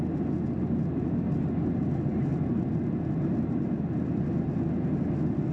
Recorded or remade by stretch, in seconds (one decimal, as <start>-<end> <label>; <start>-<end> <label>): 0.0-5.5 recorded